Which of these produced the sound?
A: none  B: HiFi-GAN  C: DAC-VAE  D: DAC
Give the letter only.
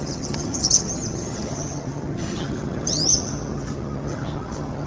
B